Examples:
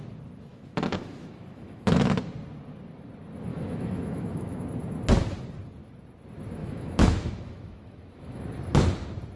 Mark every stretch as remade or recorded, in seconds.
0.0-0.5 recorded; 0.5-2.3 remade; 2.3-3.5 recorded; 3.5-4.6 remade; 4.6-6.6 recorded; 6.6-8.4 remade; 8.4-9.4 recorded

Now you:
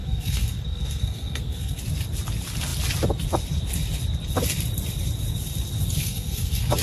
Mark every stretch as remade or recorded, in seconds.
0.0-1.8 remade; 1.8-6.0 recorded; 6.0-6.8 remade

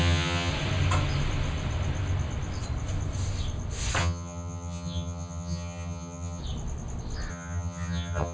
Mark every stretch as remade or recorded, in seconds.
0.0-0.5 remade; 0.5-4.0 recorded; 4.0-6.4 remade; 6.4-7.3 recorded; 7.3-8.3 remade

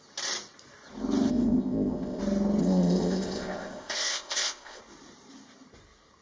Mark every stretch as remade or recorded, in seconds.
0.0-1.3 recorded; 1.3-2.2 remade; 2.2-2.6 recorded; 2.6-4.8 remade; 4.8-6.2 recorded

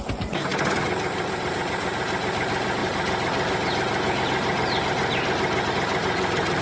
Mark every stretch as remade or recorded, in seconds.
0.0-6.6 recorded

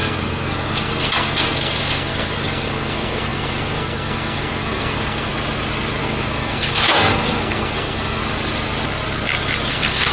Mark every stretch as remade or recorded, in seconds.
0.0-5.3 remade; 5.3-6.0 recorded; 6.0-8.2 remade; 8.2-9.7 recorded; 9.7-10.1 remade